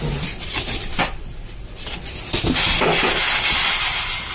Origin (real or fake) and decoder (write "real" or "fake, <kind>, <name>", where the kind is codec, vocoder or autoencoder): real